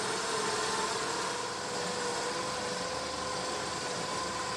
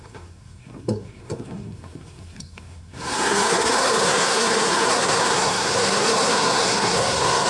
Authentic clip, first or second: first